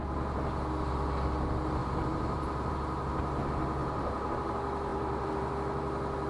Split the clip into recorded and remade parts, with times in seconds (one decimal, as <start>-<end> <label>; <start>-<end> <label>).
0.0-1.8 recorded; 1.8-2.7 remade; 2.7-3.8 recorded; 3.8-4.3 remade; 4.3-4.9 recorded; 4.9-5.5 remade; 5.5-6.3 recorded